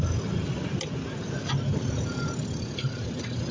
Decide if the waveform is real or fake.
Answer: real